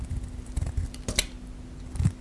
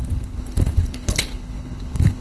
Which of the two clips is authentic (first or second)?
first